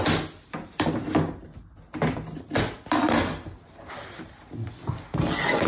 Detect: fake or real real